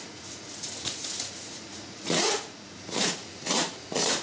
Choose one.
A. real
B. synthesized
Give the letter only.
B